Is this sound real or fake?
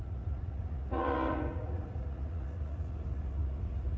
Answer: fake